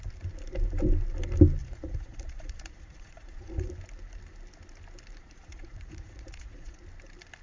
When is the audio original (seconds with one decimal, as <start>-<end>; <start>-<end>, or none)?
0.0-1.6; 3.7-5.2; 6.8-7.4